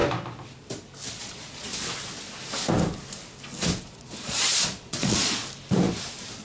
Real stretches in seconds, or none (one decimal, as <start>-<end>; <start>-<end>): 0.0-1.2; 1.7-3.8; 5.4-6.4